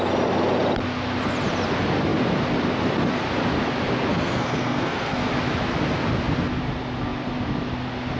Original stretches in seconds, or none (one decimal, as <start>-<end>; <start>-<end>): 0.0-4.1; 5.3-8.2